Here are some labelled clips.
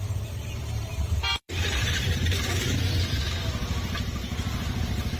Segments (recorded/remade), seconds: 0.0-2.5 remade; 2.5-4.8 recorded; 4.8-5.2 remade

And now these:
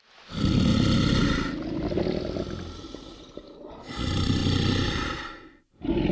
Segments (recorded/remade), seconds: 0.0-6.1 recorded

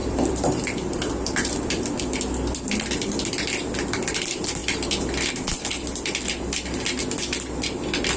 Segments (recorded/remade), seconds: 0.0-2.0 remade; 2.0-8.2 recorded